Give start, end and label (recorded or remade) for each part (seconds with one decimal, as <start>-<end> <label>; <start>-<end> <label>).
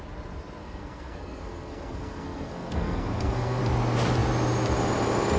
0.0-0.6 recorded; 0.6-3.6 remade; 3.6-5.4 recorded